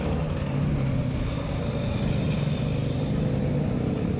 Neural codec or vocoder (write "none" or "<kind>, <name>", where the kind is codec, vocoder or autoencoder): none